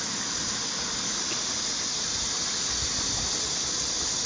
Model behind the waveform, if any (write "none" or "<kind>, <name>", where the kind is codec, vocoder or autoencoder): none